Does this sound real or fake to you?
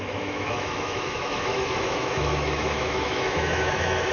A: fake